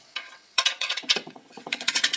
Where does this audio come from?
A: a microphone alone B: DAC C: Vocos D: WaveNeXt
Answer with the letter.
D